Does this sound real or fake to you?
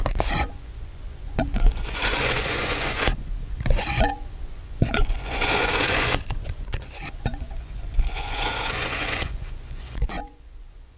fake